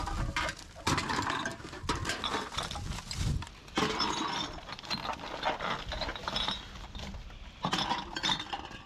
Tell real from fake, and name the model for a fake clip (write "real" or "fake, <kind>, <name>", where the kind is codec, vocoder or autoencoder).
real